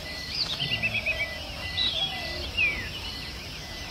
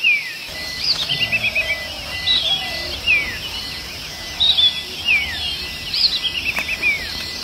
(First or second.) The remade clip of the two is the first